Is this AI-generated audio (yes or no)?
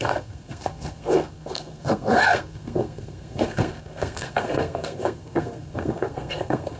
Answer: yes